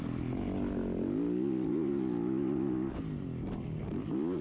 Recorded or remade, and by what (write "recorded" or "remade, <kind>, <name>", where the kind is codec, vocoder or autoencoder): recorded